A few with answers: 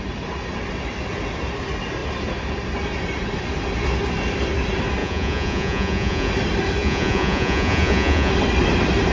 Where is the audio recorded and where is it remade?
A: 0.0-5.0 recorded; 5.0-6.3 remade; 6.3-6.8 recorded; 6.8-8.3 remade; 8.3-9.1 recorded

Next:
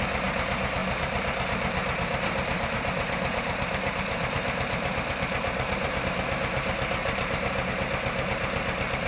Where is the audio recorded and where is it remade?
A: 0.0-0.8 recorded; 0.8-6.0 remade; 6.0-7.0 recorded; 7.0-7.7 remade; 7.7-9.1 recorded

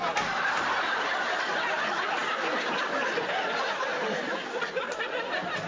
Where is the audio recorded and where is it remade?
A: 0.0-5.7 recorded

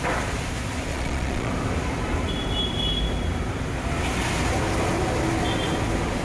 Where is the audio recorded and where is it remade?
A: 0.0-0.9 recorded; 0.9-1.5 remade; 1.5-6.2 recorded

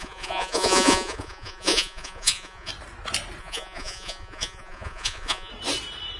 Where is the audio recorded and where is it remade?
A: 0.0-2.7 remade; 2.7-3.4 recorded; 3.4-5.5 remade; 5.5-6.2 recorded

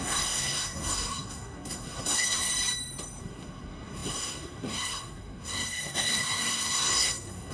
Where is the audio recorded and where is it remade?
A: 0.0-2.5 remade; 2.5-3.2 recorded; 3.2-7.5 remade

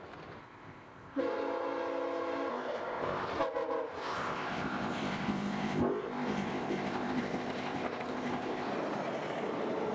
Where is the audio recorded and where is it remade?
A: 0.0-0.4 recorded; 0.4-1.2 remade; 1.2-2.5 recorded; 2.5-3.3 remade; 3.3-4.0 recorded; 4.0-8.7 remade; 8.7-9.9 recorded